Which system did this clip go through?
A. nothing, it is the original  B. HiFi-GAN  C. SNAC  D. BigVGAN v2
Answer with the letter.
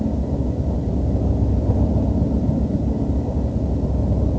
A